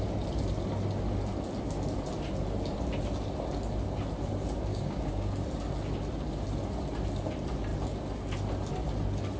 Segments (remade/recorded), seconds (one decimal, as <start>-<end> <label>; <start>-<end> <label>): 0.0-4.7 recorded; 4.7-5.3 remade; 5.3-9.4 recorded

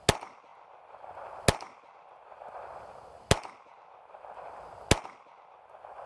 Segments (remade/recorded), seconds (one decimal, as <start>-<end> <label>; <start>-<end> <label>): 0.0-6.1 recorded

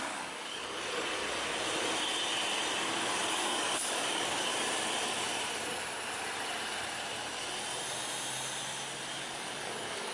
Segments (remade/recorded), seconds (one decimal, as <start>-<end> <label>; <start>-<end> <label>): 0.0-1.2 remade; 1.2-3.3 recorded; 3.3-4.5 remade; 4.5-9.2 recorded; 9.2-10.1 remade